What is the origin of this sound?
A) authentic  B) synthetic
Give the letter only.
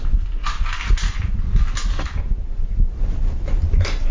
A